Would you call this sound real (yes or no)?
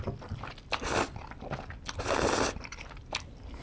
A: yes